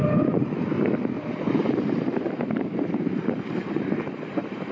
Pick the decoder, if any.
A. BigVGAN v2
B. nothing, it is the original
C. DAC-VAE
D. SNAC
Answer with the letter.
A